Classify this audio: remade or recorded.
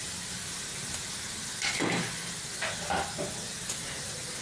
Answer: recorded